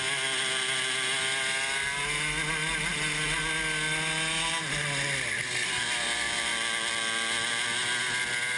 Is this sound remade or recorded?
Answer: recorded